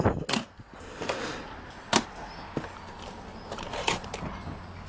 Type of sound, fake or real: real